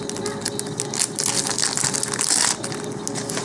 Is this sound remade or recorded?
recorded